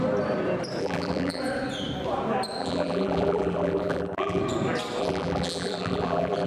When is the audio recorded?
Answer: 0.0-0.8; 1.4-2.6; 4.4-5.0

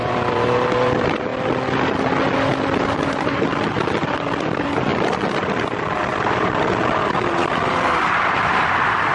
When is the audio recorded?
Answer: 1.3-2.6; 4.9-5.5

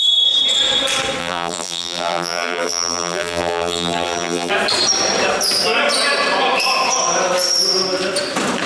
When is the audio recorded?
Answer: 0.0-1.2; 4.5-8.7

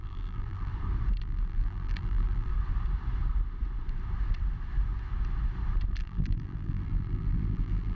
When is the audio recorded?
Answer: 0.7-1.2; 2.5-5.9

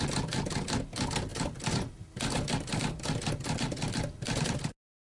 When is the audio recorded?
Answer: 0.0-1.3; 1.9-5.2

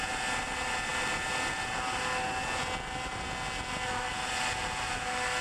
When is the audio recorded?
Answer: 0.0-5.4

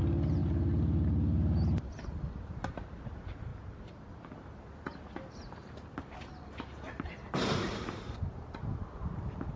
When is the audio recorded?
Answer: 0.0-3.5; 4.3-5.4; 6.0-9.6